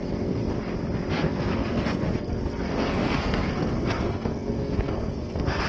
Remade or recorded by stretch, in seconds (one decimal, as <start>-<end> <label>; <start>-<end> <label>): 0.0-0.4 remade; 0.4-1.1 recorded; 1.1-5.7 remade